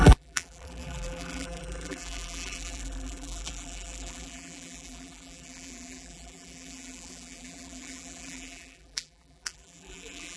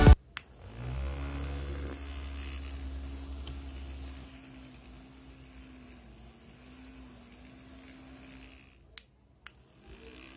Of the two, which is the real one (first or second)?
second